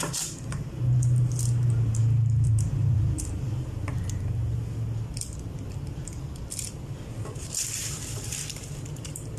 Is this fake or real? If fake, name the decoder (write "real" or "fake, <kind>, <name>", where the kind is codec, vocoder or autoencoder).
fake, vocoder, BigVGAN v2